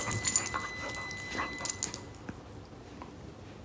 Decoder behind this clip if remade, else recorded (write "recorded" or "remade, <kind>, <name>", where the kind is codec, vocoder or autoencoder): recorded